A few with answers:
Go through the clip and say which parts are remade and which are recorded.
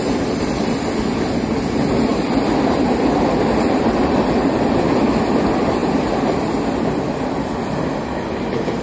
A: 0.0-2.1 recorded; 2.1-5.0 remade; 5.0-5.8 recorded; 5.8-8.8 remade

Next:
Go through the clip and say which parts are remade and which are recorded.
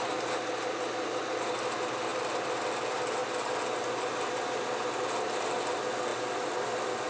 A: 0.0-7.1 recorded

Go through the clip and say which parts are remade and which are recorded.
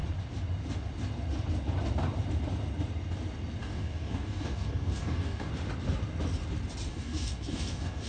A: 0.0-3.6 recorded; 3.6-5.5 remade; 5.5-6.9 recorded; 6.9-8.1 remade